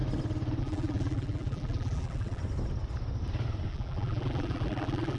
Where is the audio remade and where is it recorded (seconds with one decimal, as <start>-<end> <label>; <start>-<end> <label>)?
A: 0.0-0.6 recorded; 0.6-2.4 remade; 2.4-3.7 recorded; 3.7-5.2 remade

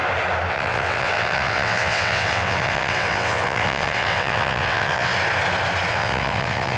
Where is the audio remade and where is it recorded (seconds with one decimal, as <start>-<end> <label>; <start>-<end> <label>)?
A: 0.0-0.5 recorded; 0.5-5.1 remade; 5.1-5.9 recorded; 5.9-6.8 remade

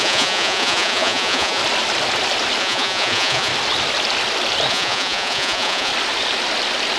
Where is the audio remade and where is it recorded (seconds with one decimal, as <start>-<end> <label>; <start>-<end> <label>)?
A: 0.0-1.6 remade; 1.6-2.6 recorded; 2.6-3.5 remade; 3.5-4.7 recorded; 4.7-5.9 remade; 5.9-7.0 recorded

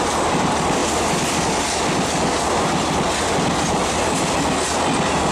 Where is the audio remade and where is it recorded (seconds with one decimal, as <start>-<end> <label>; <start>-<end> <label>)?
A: 0.0-5.3 recorded

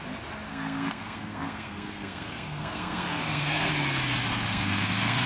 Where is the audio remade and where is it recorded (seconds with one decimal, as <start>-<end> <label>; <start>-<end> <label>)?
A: 0.0-0.5 recorded; 0.5-3.7 remade; 3.7-4.3 recorded; 4.3-5.3 remade

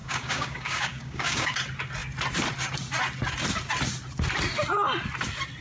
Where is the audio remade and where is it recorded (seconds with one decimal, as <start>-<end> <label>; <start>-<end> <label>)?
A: 0.0-1.5 remade; 1.5-5.6 recorded